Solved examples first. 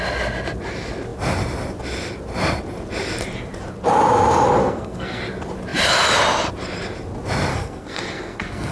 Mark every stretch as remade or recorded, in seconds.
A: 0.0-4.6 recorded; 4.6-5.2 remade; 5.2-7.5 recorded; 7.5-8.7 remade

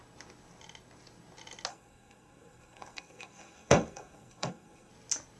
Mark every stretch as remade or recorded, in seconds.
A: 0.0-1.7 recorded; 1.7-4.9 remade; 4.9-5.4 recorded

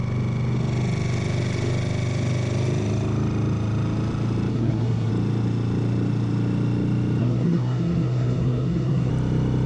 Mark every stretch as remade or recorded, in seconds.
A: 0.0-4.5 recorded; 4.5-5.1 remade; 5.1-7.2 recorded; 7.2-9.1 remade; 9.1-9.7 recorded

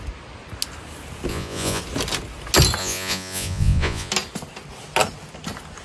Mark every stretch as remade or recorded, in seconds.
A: 0.0-1.3 recorded; 1.3-1.8 remade; 1.8-2.8 recorded; 2.8-4.1 remade; 4.1-5.8 recorded